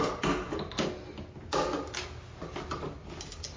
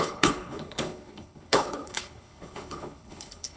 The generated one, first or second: second